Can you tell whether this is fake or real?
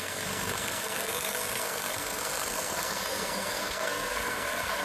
fake